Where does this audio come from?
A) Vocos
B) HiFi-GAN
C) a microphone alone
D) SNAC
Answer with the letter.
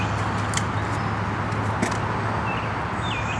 C